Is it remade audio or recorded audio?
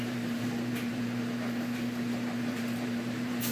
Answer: remade